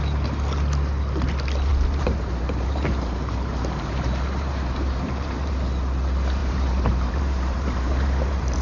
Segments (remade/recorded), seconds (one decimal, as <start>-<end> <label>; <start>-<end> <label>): 0.0-1.7 recorded; 1.7-5.5 remade; 5.5-6.4 recorded; 6.4-8.6 remade